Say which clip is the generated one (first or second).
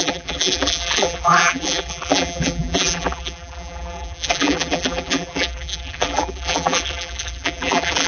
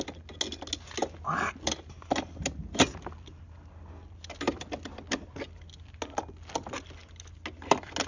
first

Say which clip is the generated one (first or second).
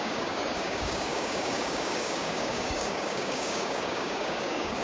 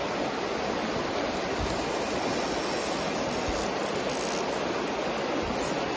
first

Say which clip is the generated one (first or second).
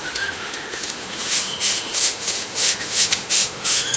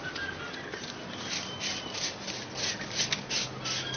first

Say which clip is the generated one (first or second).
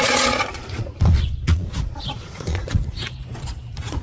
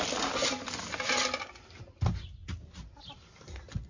first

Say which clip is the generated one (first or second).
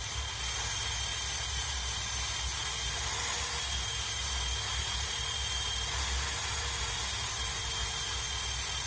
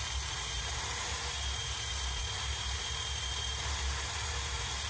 second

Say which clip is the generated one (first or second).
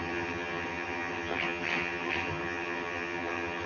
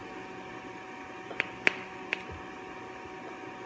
first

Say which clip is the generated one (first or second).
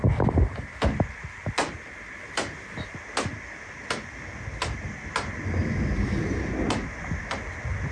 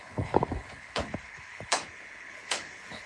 second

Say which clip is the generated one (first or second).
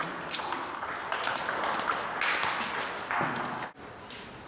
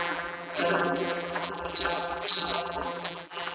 second